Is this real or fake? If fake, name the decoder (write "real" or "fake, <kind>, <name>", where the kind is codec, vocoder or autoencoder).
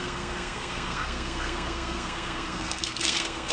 fake, codec, SNAC